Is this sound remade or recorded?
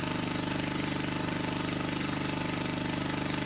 recorded